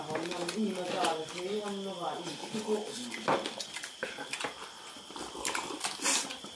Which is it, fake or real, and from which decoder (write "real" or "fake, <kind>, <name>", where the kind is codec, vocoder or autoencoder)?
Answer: real